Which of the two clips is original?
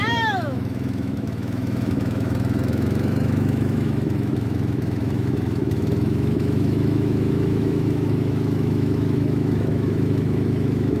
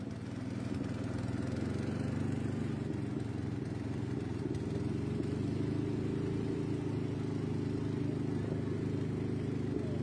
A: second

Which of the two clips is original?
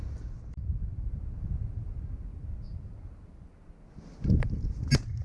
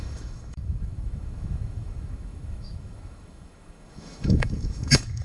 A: first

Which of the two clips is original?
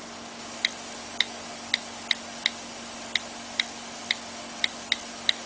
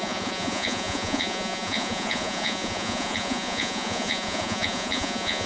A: first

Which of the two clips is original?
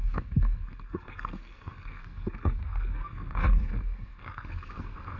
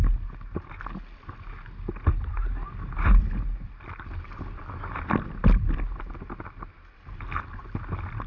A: second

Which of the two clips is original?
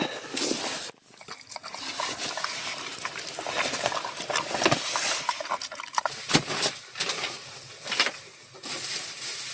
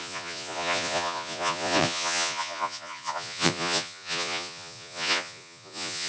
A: first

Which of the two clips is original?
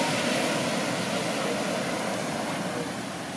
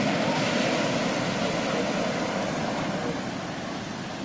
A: first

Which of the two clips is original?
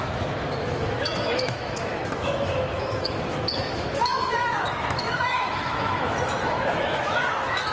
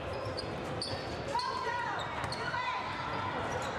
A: second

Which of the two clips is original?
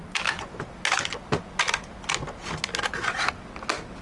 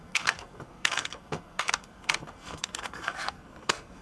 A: first